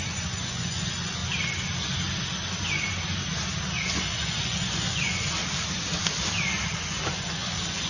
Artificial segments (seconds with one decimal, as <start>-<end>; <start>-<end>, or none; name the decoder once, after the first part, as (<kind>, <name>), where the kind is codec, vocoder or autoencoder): 0.0-1.2 (vocoder, Vocos); 3.9-5.4; 6.7-7.9

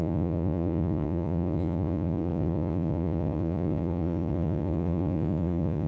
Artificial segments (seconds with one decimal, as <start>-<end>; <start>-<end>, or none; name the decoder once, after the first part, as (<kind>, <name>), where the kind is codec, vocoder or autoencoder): 0.0-5.9 (vocoder, Vocos)

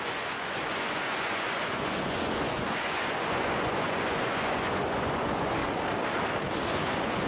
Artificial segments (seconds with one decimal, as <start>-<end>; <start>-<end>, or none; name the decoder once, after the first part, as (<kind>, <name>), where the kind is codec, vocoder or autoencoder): 0.0-5.6 (vocoder, Vocos); 6.7-7.3

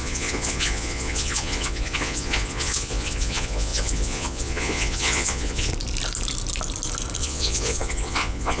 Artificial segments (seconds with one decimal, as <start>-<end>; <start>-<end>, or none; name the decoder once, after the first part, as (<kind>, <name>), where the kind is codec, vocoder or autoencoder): 0.0-5.7 (vocoder, Vocos); 7.2-8.6

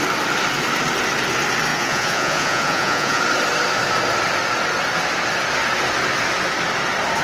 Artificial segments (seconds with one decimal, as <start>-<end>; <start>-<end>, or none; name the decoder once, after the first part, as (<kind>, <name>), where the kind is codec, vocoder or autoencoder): 1.7-3.2 (vocoder, Vocos)

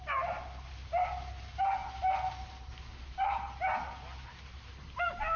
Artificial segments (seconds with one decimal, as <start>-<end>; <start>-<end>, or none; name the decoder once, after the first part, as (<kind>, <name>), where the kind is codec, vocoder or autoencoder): none

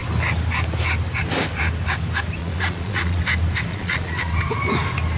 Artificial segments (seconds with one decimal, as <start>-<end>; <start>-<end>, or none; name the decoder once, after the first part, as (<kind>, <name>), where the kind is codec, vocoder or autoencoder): 2.4-3.2 (vocoder, Vocos); 3.7-4.3

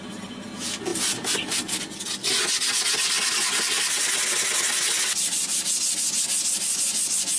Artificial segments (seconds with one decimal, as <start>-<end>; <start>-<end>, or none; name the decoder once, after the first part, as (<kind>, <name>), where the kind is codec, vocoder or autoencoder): 6.7-7.4 (vocoder, Vocos)